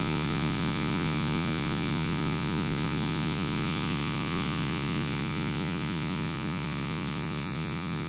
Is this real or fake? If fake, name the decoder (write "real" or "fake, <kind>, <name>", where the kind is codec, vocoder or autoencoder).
fake, vocoder, Vocos